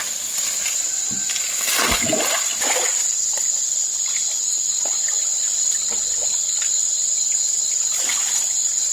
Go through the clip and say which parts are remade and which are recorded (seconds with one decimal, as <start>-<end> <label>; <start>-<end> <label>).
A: 0.0-8.9 recorded